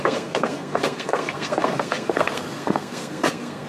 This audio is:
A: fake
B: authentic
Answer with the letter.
A